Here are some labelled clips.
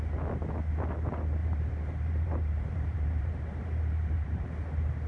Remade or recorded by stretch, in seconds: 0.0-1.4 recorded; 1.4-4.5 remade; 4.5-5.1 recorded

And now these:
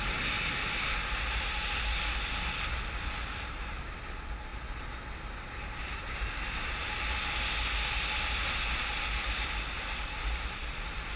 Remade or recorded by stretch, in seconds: 0.0-11.2 recorded

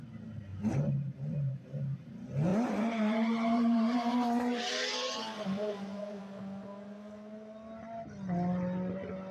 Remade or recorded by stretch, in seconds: 0.0-0.5 recorded; 0.5-2.1 remade; 2.1-2.5 recorded; 2.5-6.2 remade; 6.2-9.3 recorded

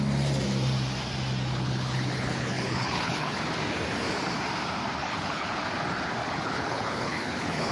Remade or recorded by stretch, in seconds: 0.0-1.5 recorded; 1.5-3.4 remade; 3.4-5.0 recorded; 5.0-5.6 remade; 5.6-6.2 recorded; 6.2-7.7 remade